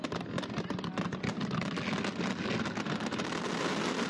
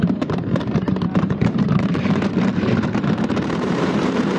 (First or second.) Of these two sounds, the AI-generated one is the second